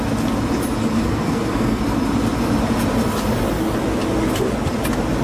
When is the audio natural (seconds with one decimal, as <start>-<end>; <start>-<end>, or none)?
0.0-1.1; 1.8-5.2